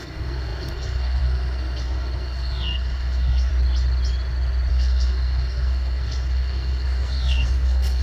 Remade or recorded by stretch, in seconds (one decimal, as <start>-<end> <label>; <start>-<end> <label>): 0.0-3.5 remade; 3.5-4.7 recorded; 4.7-8.0 remade